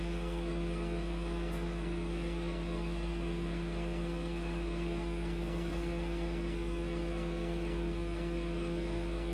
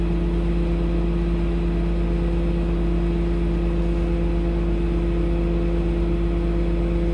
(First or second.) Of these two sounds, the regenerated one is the first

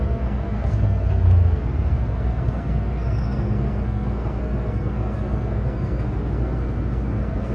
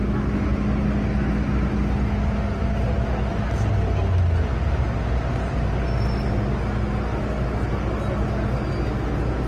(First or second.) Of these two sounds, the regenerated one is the first